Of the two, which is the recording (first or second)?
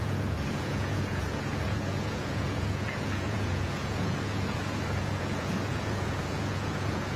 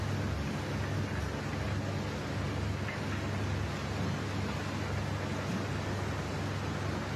second